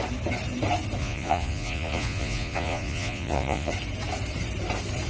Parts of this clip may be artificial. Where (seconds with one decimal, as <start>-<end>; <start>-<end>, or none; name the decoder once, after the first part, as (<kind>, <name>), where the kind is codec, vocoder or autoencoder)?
1.0-3.7 (vocoder, Vocos)